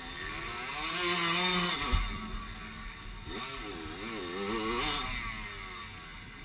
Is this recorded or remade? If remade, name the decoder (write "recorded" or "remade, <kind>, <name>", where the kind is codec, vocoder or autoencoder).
recorded